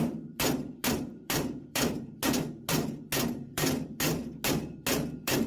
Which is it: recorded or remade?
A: remade